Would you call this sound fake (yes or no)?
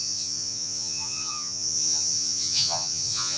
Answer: yes